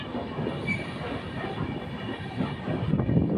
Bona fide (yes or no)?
yes